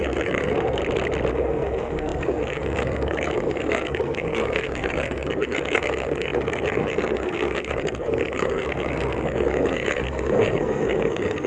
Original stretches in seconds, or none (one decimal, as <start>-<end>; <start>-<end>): 0.8-1.3